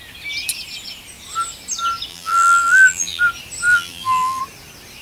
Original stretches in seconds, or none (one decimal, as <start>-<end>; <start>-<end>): 0.0-2.1; 3.2-3.7; 4.4-5.0